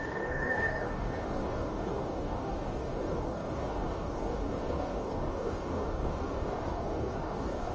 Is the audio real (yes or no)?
no